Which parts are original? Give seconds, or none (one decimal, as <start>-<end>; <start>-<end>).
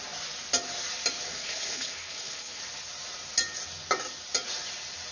0.0-1.3; 2.6-5.1